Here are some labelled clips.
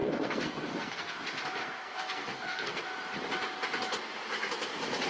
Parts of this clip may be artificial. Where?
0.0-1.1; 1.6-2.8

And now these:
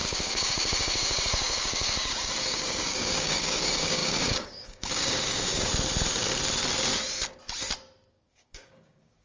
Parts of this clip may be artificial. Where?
0.0-5.7; 8.1-9.2

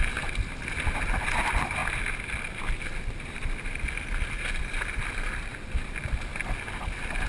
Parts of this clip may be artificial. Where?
none

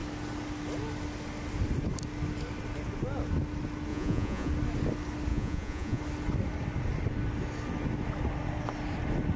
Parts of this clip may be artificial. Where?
3.9-4.5; 5.3-6.0

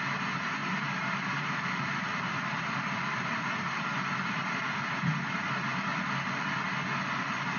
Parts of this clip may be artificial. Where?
0.6-4.6

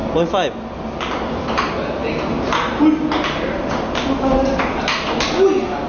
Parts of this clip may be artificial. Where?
none

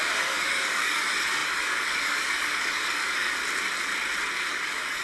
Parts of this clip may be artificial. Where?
0.0-3.4; 4.5-5.0